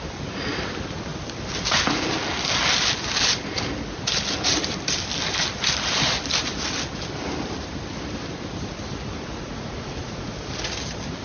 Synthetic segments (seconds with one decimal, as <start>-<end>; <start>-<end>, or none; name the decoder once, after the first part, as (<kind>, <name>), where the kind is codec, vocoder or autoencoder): 9.3-10.3 (vocoder, Vocos)